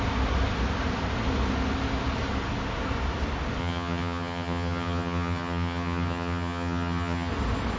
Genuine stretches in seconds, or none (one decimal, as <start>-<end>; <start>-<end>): 0.0-3.6; 7.3-7.8